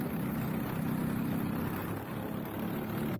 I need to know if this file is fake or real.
real